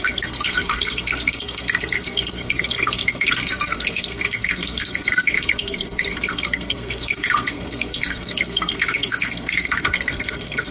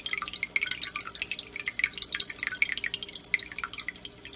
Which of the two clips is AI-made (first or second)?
first